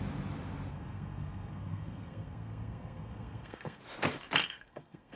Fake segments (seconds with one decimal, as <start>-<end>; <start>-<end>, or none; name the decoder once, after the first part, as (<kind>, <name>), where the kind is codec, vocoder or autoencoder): 0.7-3.8 (codec, SNAC); 4.4-5.2